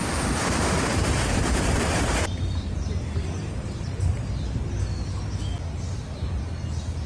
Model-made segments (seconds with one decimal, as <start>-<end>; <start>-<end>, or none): 0.0-3.8